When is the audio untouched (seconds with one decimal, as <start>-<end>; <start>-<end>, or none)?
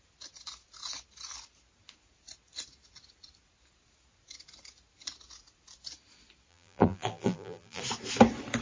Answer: 0.0-6.5; 7.8-8.6